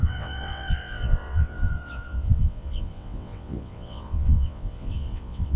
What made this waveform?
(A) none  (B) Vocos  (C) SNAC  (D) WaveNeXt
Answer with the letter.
D